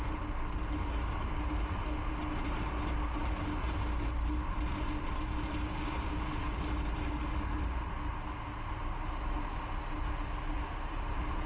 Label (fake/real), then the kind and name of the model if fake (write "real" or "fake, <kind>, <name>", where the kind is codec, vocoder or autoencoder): real